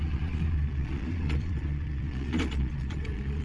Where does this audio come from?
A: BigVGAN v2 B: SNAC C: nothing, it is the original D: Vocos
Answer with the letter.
D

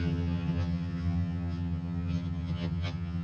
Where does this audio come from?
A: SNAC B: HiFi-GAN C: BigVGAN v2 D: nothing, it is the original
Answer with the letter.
B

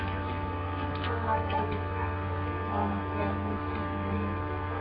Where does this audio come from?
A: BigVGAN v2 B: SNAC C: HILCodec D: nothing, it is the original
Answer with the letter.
B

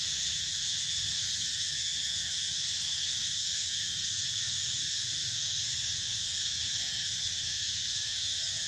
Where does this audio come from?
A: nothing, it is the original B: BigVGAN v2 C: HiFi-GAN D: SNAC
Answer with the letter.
D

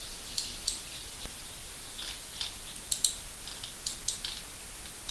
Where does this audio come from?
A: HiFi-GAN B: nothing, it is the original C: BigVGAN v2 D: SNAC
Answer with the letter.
B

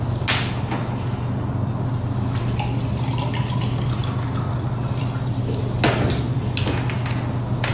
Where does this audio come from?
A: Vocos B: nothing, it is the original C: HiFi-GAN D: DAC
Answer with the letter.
B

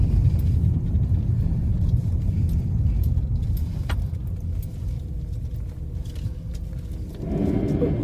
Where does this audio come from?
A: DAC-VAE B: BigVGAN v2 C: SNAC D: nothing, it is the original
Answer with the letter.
D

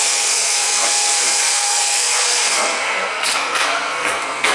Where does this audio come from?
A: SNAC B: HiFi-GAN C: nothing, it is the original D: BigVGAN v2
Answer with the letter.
A